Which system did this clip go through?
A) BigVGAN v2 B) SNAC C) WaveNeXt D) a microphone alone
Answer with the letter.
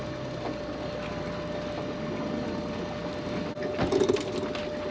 D